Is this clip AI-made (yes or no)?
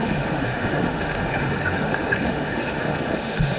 yes